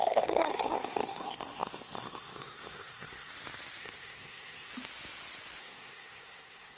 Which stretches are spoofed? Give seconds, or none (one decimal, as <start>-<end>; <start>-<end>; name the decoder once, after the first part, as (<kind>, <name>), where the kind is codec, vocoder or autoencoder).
0.0-3.3 (codec, SNAC); 3.8-4.7; 5.6-6.8